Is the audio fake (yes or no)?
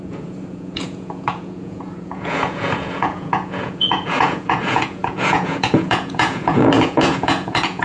yes